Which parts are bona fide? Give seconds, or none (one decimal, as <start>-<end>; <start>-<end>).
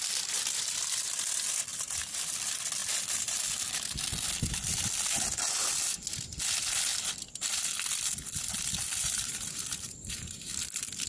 0.0-1.7; 2.2-9.0; 10.3-11.1